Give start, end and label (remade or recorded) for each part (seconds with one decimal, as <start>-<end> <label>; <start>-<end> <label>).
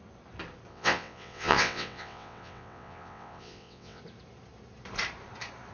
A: 0.0-0.7 recorded; 0.7-4.0 remade; 4.0-5.7 recorded